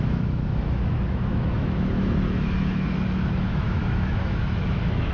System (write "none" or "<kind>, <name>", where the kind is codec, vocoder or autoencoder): autoencoder, DAC-VAE